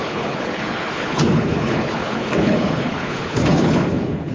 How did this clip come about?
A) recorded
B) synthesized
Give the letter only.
B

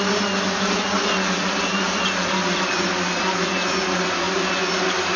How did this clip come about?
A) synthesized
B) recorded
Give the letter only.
B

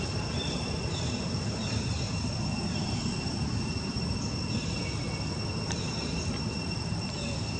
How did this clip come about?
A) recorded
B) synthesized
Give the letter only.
B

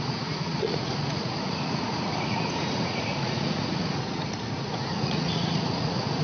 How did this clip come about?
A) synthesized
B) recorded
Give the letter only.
A